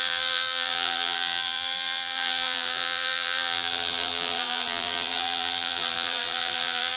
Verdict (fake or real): fake